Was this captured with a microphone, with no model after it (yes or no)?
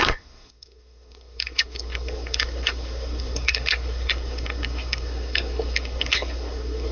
no